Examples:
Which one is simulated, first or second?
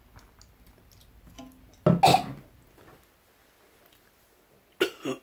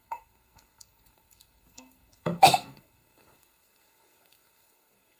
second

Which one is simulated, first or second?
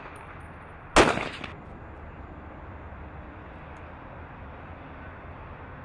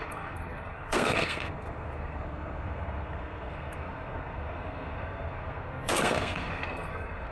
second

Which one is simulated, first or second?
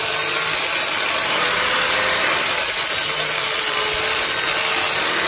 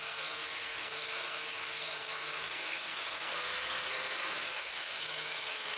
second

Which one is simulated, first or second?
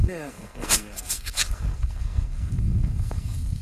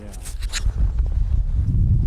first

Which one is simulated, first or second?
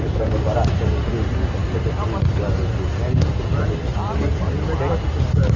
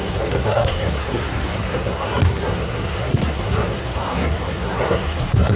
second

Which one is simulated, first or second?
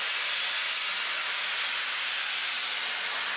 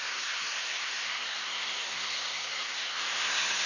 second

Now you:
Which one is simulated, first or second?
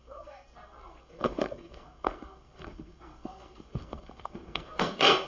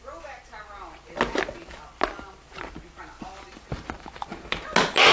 first